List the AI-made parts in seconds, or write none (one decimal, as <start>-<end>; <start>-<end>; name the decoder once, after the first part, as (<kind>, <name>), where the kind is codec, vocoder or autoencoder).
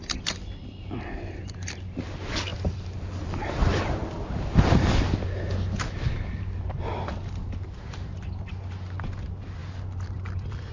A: 2.5-3.4 (vocoder, BigVGAN v2); 9.6-10.7